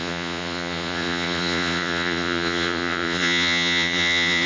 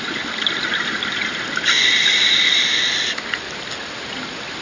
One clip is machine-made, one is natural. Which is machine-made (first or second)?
first